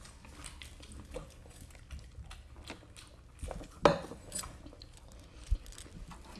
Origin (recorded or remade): recorded